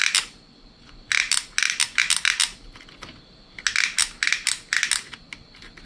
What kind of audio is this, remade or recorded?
recorded